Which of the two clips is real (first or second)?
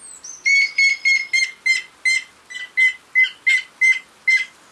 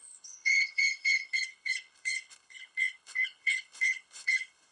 first